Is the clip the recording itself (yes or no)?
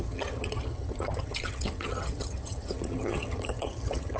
no